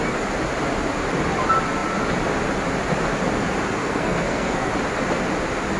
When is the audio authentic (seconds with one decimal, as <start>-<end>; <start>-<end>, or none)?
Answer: 0.0-3.8; 4.7-5.8